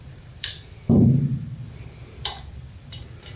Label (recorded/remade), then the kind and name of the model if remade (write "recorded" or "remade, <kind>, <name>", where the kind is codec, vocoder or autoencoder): remade, vocoder, BigVGAN v2